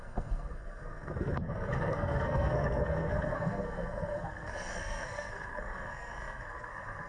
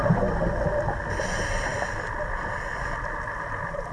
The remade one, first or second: first